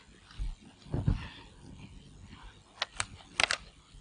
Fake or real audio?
real